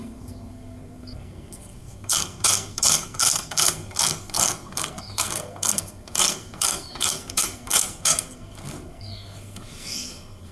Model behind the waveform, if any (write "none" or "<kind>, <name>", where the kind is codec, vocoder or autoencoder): codec, SNAC